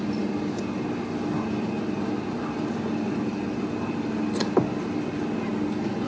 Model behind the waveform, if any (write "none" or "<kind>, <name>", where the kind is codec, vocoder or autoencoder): none